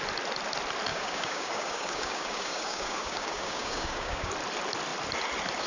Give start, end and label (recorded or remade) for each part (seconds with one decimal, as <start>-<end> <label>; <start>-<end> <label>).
0.0-0.9 recorded; 0.9-4.3 remade; 4.3-5.7 recorded